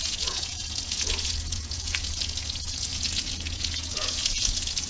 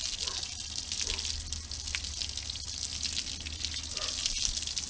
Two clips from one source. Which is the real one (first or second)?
second